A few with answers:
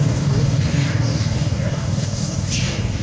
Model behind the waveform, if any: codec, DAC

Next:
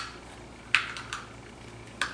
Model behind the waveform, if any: none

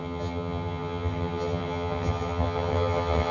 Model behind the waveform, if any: vocoder, HiFi-GAN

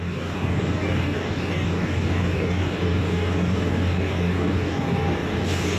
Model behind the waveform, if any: codec, DAC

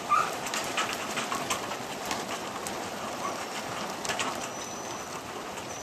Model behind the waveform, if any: vocoder, BigVGAN v2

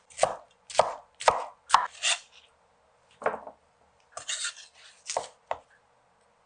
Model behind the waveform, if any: none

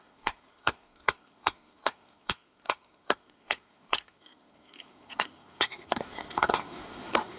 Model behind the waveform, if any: codec, SNAC